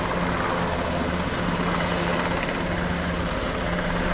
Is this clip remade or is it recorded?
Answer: recorded